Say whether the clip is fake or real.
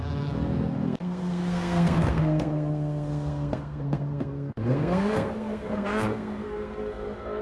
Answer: fake